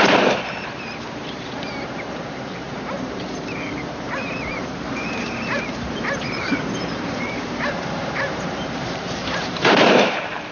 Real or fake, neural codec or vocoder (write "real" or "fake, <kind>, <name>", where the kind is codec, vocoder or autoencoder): fake, vocoder, BigVGAN v2